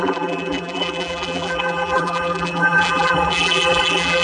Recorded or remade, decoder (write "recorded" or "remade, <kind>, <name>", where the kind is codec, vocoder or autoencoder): remade, vocoder, BigVGAN v2